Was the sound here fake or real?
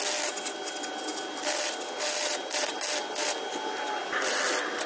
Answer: real